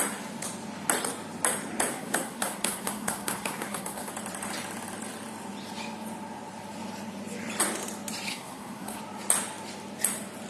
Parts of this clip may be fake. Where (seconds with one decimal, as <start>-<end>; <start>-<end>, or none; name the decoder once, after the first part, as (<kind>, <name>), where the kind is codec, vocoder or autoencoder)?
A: 1.9-4.1 (codec, SNAC); 8.3-9.0